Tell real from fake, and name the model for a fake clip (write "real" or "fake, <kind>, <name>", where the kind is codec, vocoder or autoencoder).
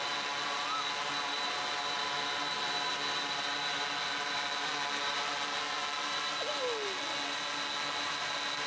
real